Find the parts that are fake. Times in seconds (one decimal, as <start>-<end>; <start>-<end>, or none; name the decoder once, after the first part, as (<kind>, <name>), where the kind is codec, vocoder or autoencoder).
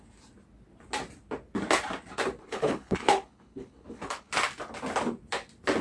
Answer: 2.4-4.3 (codec, HILCodec)